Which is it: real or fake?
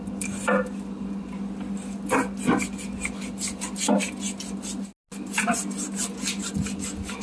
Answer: real